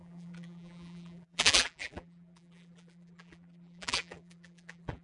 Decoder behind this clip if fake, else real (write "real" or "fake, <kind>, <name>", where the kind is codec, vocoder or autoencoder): fake, vocoder, BigVGAN v2